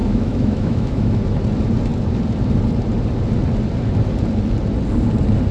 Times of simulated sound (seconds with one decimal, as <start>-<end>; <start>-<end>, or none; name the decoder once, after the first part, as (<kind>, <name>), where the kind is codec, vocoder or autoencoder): 0.0-1.2 (autoencoder, DAC-VAE)

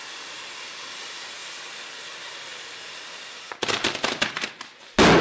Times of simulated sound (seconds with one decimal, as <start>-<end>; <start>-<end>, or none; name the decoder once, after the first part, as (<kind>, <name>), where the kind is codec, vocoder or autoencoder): none

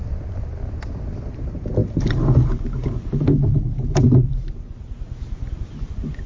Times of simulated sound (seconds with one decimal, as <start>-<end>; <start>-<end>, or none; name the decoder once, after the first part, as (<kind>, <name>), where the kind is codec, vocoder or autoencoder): none